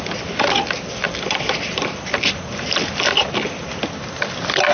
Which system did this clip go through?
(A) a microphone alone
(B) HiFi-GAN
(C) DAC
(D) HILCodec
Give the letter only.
A